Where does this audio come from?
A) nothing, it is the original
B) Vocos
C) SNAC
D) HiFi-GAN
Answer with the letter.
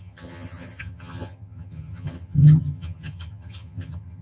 D